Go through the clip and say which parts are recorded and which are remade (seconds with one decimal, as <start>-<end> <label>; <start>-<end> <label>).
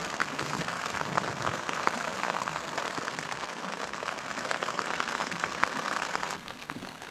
0.0-7.1 remade